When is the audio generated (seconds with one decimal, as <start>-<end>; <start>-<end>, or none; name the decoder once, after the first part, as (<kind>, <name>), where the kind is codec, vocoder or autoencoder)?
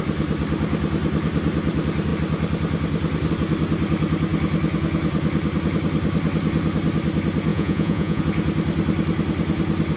7.5-8.2 (vocoder, Vocos)